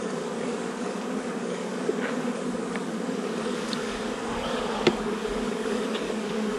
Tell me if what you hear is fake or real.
fake